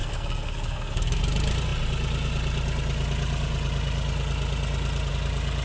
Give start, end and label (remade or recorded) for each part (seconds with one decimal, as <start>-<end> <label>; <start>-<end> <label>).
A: 0.0-1.2 remade; 1.2-5.6 recorded